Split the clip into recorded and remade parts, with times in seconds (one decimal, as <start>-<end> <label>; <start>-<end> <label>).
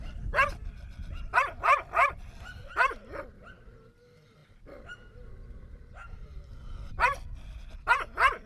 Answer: 0.0-8.5 recorded